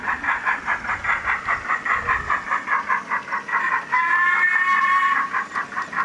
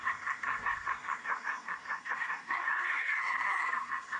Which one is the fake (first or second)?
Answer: second